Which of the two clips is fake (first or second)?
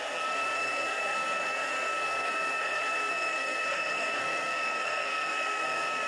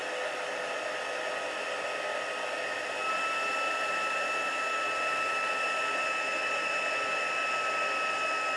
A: first